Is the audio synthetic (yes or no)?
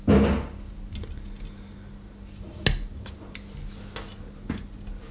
no